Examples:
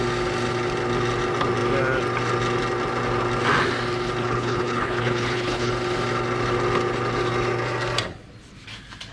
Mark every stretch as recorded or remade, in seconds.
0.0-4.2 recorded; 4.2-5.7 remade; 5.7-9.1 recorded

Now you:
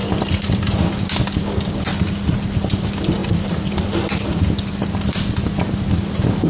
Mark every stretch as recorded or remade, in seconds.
0.0-6.5 recorded